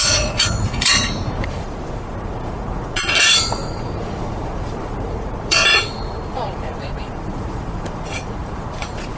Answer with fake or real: fake